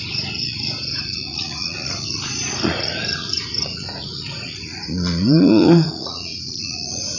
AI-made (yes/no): yes